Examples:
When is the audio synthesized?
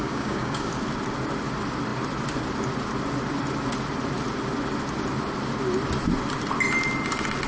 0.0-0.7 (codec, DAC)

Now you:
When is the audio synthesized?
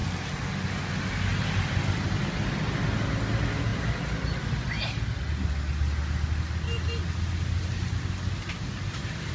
none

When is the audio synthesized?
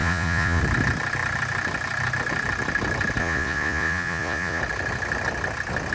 0.0-0.6 (vocoder, Vocos); 3.2-4.6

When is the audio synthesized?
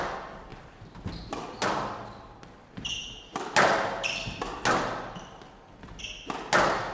none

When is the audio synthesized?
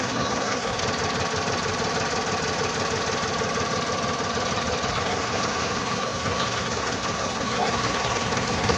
0.0-0.8 (codec, SNAC); 4.9-8.8